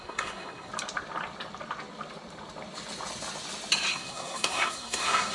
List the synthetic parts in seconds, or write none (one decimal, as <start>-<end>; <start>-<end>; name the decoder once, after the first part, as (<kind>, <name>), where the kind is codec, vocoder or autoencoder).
0.0-0.7 (codec, SNAC); 3.9-5.3